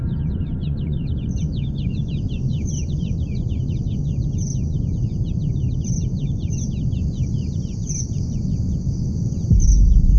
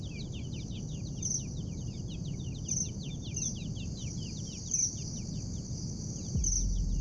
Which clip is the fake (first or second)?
first